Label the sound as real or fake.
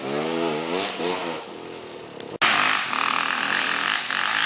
real